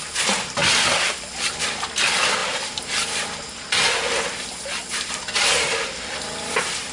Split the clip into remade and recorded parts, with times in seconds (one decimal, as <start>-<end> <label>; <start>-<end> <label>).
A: 0.0-6.9 recorded